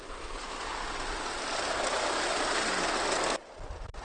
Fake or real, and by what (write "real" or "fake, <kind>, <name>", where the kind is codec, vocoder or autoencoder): real